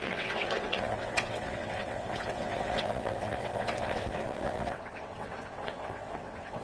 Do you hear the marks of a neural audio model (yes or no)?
yes